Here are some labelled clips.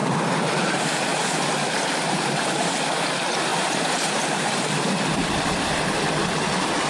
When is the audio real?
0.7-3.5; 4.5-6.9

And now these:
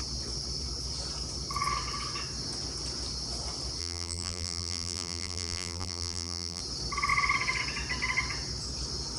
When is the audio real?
0.0-3.8; 6.6-9.2